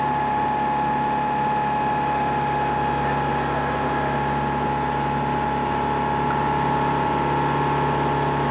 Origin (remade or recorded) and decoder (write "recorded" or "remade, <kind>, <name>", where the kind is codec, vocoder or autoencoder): recorded